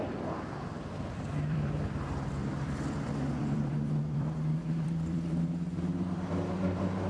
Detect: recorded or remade remade